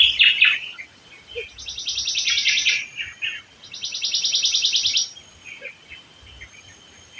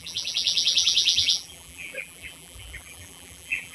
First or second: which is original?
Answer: first